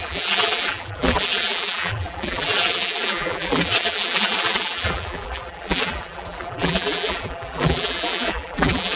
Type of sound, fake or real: fake